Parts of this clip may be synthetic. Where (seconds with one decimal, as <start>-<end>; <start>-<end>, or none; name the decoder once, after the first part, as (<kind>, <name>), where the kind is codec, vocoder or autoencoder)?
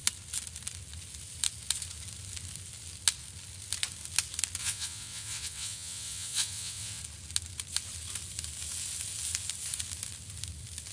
4.6-7.0 (vocoder, WaveNeXt)